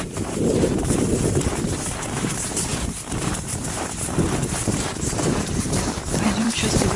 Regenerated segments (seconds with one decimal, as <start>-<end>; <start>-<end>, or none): 0.0-7.0

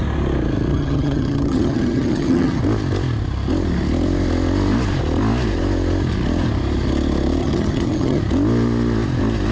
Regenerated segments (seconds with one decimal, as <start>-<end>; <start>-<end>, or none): 0.7-2.6; 7.4-8.2

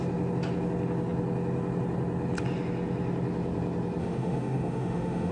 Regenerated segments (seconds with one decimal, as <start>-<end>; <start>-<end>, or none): 4.0-5.3

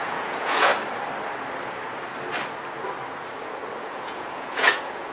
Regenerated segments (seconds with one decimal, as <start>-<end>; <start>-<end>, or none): 0.0-0.7; 3.8-5.1

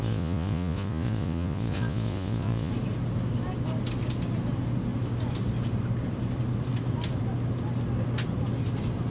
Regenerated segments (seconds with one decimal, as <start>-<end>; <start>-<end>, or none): 0.0-2.7